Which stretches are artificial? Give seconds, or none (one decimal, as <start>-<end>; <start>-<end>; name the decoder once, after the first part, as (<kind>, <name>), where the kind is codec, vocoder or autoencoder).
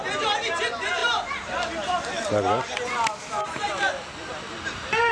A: none